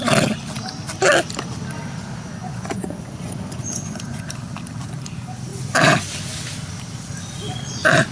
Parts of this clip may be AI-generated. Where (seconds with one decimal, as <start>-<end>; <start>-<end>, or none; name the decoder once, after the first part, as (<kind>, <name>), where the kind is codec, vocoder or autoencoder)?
2.4-4.3 (vocoder, Vocos)